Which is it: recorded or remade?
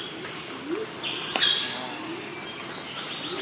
recorded